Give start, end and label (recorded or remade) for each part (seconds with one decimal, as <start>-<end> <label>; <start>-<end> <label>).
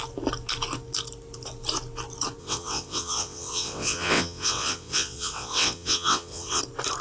0.0-2.4 recorded; 2.4-6.6 remade; 6.6-7.0 recorded